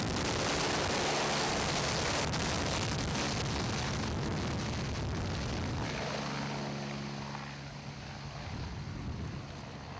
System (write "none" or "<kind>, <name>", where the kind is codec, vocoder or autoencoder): none